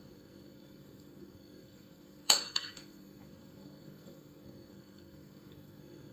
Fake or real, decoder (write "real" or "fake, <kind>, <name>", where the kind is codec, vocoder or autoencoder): fake, codec, SNAC